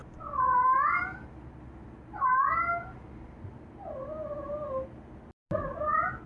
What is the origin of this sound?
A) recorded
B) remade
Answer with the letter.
A